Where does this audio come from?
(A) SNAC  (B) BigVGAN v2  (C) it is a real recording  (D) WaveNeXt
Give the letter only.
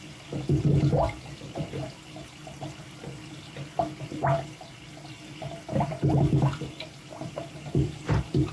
C